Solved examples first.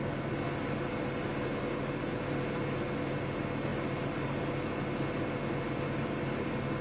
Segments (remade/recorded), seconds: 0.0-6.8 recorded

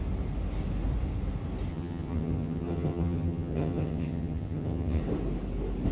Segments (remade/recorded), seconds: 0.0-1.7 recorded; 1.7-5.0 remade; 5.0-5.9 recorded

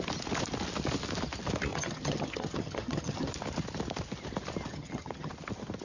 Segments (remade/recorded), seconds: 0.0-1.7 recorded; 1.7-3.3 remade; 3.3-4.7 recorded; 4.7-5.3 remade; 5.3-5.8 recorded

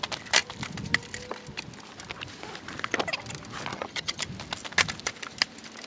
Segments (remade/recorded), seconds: 0.0-3.7 recorded; 3.7-4.2 remade; 4.2-5.9 recorded

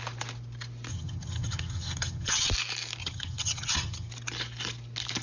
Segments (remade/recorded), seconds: 0.0-0.9 recorded; 0.9-2.5 remade; 2.5-3.0 recorded; 3.0-4.1 remade; 4.1-5.2 recorded

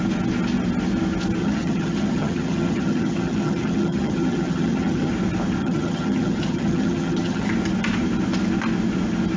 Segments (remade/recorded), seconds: 0.0-1.4 recorded; 1.4-5.1 remade; 5.1-5.6 recorded; 5.6-7.5 remade; 7.5-9.4 recorded